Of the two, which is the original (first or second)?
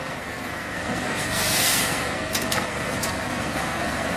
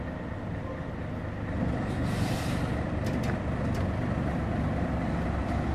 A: second